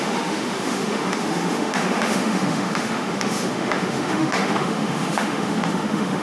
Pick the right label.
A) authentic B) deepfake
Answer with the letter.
B